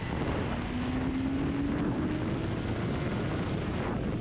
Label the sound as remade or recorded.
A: recorded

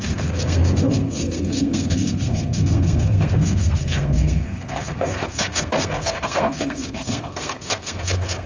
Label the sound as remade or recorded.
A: remade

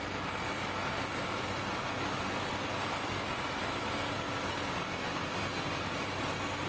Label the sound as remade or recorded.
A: recorded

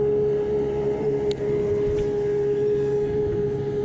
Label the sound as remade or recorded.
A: recorded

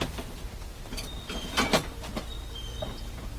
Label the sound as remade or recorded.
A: recorded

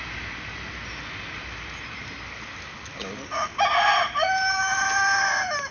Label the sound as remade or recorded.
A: recorded